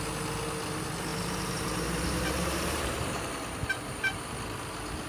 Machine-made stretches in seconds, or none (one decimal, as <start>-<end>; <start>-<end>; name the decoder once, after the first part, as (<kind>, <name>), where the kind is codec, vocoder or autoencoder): 1.1-4.2 (vocoder, BigVGAN v2)